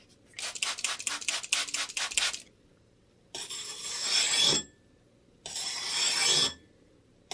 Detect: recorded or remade recorded